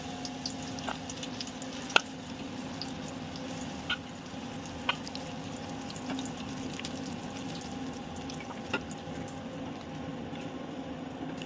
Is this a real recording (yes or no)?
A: yes